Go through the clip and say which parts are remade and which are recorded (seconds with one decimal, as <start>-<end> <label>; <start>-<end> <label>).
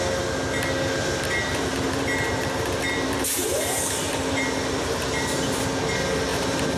0.0-1.5 recorded; 1.5-5.6 remade; 5.6-6.3 recorded; 6.3-6.8 remade